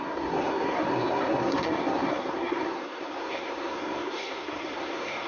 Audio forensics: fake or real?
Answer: fake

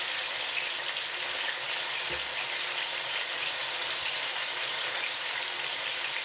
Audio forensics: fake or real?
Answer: real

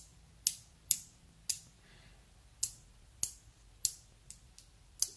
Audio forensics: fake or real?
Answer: real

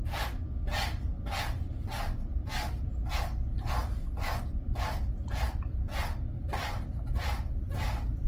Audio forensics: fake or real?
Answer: real